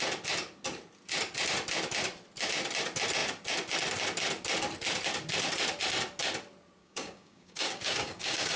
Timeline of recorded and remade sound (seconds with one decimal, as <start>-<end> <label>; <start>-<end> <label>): 0.0-6.8 recorded; 6.8-8.6 remade